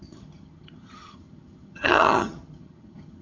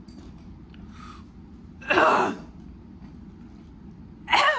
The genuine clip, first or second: second